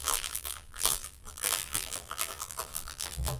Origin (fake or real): fake